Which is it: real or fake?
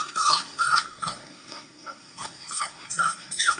fake